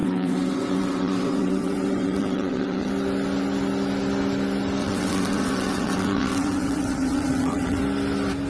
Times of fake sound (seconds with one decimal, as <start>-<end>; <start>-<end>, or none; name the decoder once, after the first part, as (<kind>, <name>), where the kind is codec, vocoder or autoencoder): 0.0-2.9 (vocoder, WaveNeXt); 4.8-7.8